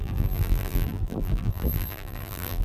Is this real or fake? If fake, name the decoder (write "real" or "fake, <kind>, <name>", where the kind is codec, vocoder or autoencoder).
fake, vocoder, BigVGAN v2